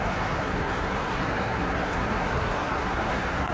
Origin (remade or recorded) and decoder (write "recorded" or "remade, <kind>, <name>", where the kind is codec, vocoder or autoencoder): remade, codec, SNAC